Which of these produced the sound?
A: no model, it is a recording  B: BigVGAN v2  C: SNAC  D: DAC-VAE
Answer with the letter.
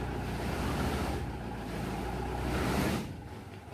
A